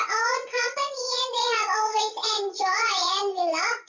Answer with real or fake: fake